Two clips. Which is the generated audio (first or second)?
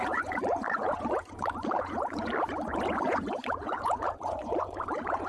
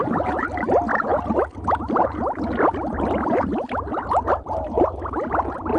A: first